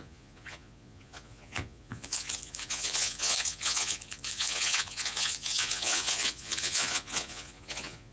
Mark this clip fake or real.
fake